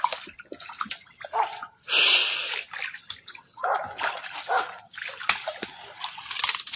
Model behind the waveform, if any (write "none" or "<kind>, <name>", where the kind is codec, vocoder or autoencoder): none